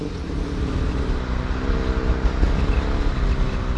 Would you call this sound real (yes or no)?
yes